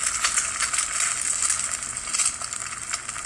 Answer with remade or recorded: recorded